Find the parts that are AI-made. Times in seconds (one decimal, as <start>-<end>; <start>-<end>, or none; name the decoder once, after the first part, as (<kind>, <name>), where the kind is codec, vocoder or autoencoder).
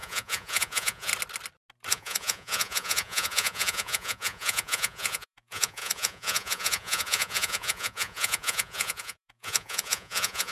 0.0-1.1 (vocoder, Vocos); 1.9-10.5